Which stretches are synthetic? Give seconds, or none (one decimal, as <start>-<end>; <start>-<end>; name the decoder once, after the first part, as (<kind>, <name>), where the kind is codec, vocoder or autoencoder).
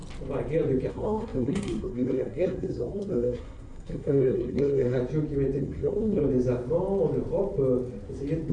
0.9-5.0 (codec, SNAC); 5.6-6.2